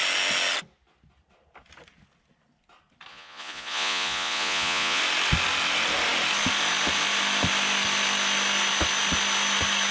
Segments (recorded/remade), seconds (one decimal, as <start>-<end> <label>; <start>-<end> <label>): 0.0-3.1 recorded; 3.1-5.0 remade; 5.0-9.9 recorded